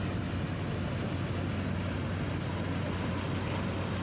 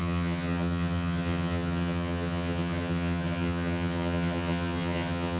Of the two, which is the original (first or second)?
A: first